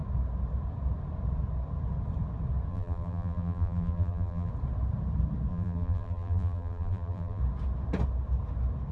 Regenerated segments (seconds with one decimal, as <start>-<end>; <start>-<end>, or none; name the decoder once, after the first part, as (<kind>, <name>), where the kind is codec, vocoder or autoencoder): 2.7-4.5 (vocoder, BigVGAN v2); 5.5-7.4